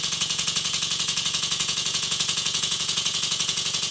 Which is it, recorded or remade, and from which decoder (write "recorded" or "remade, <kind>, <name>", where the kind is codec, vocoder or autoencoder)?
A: remade, vocoder, Vocos